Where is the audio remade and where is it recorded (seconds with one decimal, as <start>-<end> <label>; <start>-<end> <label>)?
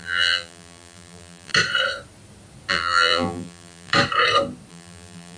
0.0-1.5 remade; 1.5-2.7 recorded; 2.7-3.9 remade; 3.9-4.7 recorded; 4.7-5.4 remade